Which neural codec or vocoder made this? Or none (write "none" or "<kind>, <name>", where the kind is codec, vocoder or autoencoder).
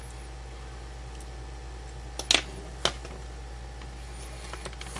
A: none